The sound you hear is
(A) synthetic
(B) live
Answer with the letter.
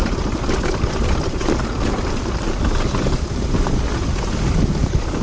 B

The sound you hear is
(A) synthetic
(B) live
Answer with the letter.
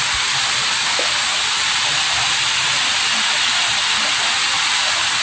B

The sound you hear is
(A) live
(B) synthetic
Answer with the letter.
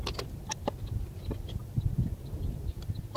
A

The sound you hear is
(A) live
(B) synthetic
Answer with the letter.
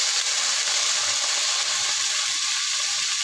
B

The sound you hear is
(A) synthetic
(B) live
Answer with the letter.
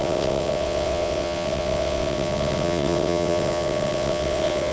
A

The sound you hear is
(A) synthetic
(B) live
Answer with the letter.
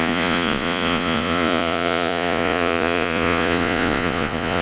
A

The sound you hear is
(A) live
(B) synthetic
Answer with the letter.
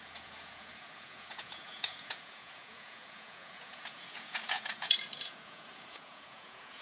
B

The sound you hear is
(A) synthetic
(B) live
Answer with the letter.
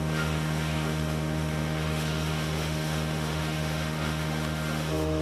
A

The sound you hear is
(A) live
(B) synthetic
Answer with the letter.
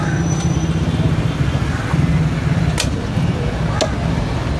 A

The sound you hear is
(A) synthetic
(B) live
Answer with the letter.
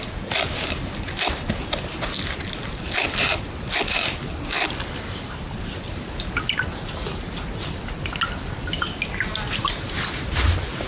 B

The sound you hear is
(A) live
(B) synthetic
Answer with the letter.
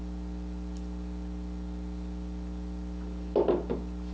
A